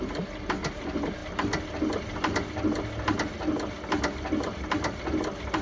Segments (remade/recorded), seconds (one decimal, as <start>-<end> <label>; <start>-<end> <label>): 0.0-5.6 recorded